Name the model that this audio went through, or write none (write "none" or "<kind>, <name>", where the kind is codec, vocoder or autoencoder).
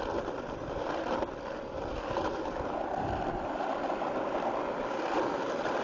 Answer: vocoder, BigVGAN v2